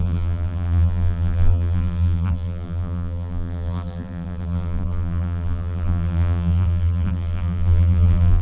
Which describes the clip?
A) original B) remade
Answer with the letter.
B